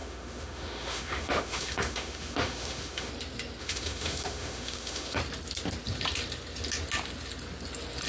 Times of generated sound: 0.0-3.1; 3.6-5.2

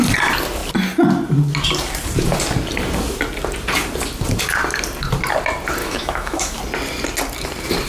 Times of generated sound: 5.8-6.6